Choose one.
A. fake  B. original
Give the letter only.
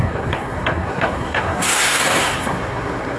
A